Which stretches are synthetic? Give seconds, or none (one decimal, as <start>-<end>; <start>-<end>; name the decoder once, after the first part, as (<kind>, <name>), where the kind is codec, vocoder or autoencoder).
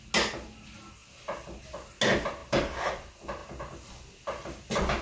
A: none